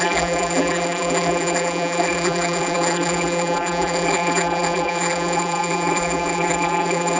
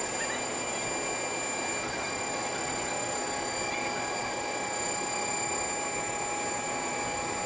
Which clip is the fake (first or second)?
first